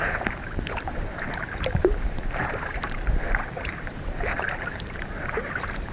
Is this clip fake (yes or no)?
yes